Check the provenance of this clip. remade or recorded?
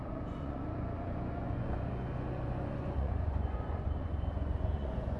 remade